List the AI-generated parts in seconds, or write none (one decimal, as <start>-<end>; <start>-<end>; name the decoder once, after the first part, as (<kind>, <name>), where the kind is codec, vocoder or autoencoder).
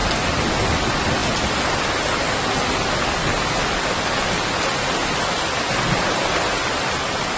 none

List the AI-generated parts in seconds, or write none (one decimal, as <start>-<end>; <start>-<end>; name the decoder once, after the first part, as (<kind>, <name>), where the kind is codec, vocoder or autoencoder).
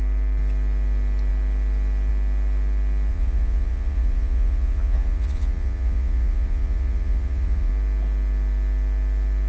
3.1-7.7 (vocoder, Vocos)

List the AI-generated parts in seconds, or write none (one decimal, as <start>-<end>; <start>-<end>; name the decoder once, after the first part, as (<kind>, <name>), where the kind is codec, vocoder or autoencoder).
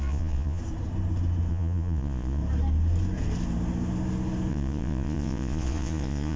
0.0-0.6 (vocoder, Vocos); 1.5-2.4; 4.5-6.4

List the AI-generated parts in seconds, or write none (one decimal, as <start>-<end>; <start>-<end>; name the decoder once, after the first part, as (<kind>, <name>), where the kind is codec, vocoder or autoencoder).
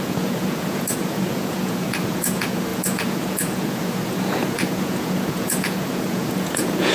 0.0-6.9 (vocoder, Vocos)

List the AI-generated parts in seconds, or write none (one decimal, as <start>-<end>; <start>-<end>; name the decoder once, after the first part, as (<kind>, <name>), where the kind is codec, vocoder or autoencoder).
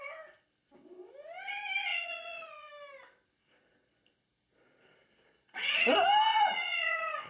1.9-2.7 (vocoder, Vocos); 5.0-5.7; 6.3-7.3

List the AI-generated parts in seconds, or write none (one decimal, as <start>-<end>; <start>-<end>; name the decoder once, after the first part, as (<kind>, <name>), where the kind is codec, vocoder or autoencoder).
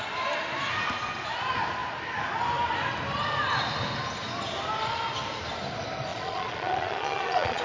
6.1-7.6 (vocoder, Vocos)